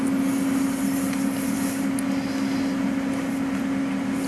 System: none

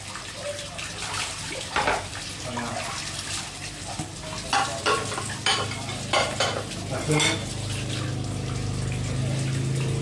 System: none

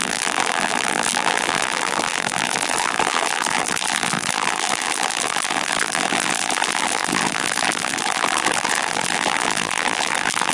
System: vocoder, BigVGAN v2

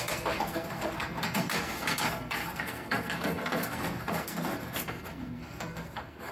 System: codec, SNAC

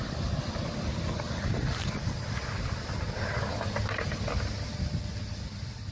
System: none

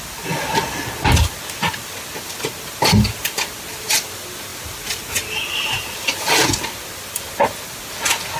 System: none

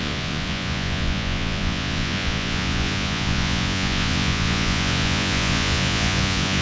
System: vocoder, Vocos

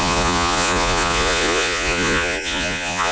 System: vocoder, Vocos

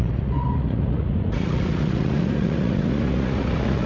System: vocoder, Vocos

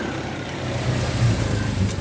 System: vocoder, BigVGAN v2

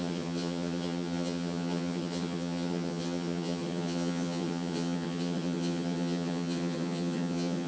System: vocoder, HiFi-GAN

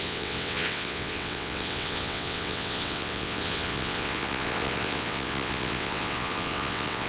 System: vocoder, WaveNeXt